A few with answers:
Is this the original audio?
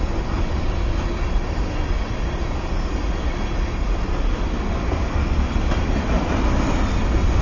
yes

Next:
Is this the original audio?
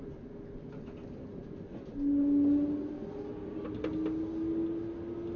yes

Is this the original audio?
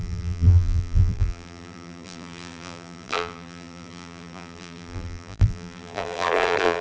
no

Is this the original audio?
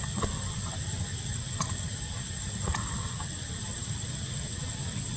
no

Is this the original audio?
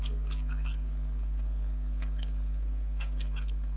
no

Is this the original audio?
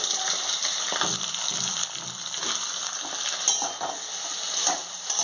yes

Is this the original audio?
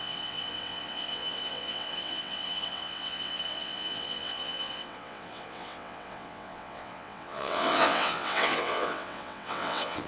no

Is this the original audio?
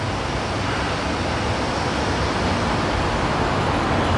yes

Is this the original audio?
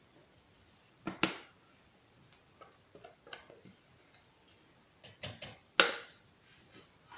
yes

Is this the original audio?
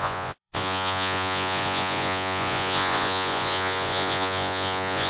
no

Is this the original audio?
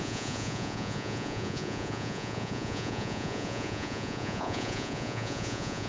no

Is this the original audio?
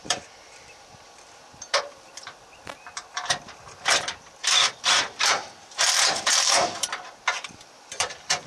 no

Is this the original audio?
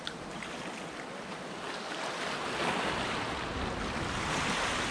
yes